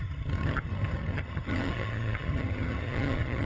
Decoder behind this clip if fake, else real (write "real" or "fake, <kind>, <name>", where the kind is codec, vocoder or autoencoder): fake, vocoder, HiFi-GAN